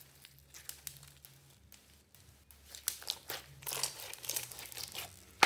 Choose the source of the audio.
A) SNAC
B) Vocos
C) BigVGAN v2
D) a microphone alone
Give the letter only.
D